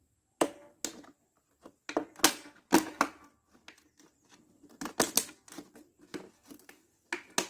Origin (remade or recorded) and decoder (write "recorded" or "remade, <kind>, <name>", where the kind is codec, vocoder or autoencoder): recorded